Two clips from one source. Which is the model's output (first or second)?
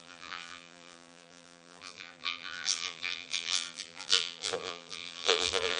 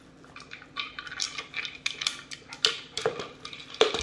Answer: first